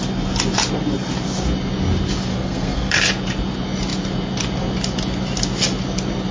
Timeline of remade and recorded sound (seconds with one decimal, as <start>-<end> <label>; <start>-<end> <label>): 0.0-2.3 recorded; 2.3-2.9 remade; 2.9-6.3 recorded